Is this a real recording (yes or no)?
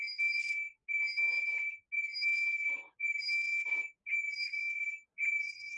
yes